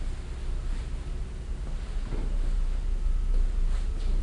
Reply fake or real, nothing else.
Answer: real